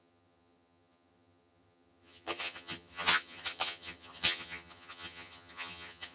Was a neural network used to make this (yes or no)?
yes